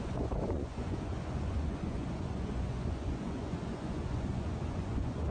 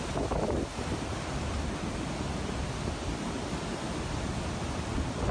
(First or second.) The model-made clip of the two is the first